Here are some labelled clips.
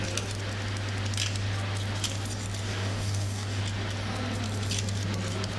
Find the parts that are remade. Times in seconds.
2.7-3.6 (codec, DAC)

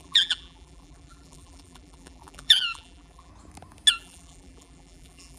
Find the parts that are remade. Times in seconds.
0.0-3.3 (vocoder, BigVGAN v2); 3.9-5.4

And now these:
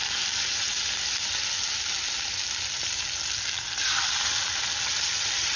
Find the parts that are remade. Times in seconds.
none